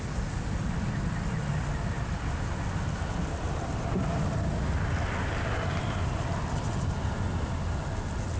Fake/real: real